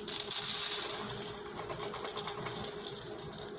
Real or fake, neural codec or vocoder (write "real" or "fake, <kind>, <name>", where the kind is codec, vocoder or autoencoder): real